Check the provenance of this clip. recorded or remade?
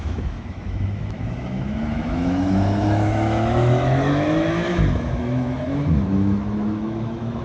remade